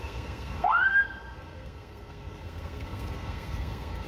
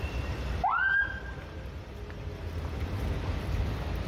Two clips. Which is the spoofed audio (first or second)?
first